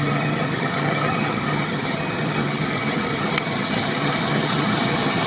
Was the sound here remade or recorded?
remade